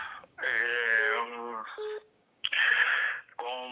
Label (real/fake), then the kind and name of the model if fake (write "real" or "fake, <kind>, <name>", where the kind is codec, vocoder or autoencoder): fake, codec, DAC